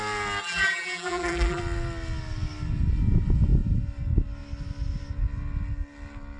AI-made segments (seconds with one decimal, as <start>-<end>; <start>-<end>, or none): 0.4-1.6